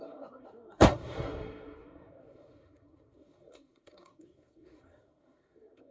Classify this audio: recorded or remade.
remade